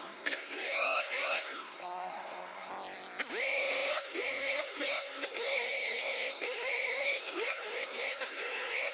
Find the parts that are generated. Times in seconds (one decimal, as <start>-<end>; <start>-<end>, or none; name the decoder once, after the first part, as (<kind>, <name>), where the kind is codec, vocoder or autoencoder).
0.0-2.7 (codec, SNAC); 3.4-8.9